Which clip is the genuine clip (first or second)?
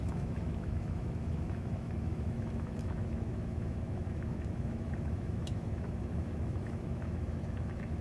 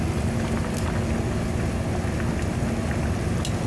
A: second